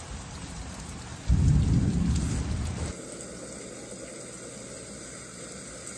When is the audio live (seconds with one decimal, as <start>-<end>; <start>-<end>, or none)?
1.1-4.7

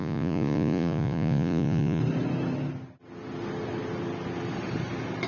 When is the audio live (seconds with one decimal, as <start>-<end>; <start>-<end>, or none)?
2.0-5.3

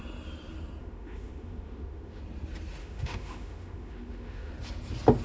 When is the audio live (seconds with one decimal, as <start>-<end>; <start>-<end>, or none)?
0.0-0.8; 2.2-2.8; 4.5-5.2

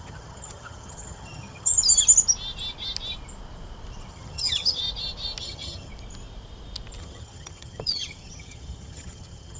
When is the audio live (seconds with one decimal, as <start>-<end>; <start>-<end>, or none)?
1.7-4.1; 4.8-5.4; 5.9-7.0

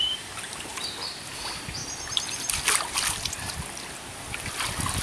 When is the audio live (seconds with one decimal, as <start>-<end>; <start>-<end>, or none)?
0.7-1.3; 1.8-5.0

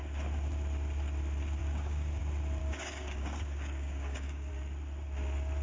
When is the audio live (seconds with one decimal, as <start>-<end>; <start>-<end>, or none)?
0.0-1.6; 2.2-2.6; 4.5-5.6

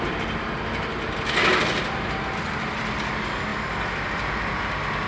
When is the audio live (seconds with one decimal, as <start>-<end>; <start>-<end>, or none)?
0.0-1.5; 3.1-3.5; 4.4-5.1

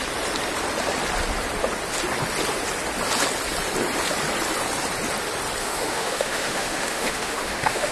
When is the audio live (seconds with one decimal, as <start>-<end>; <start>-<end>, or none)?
0.0-5.6